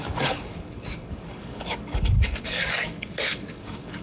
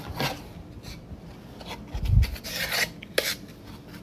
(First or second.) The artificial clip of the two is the first